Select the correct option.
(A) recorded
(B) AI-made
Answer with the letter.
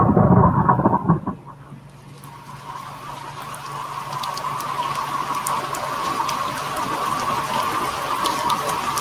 A